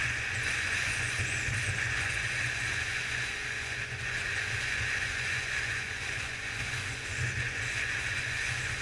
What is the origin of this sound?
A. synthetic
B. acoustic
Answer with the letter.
A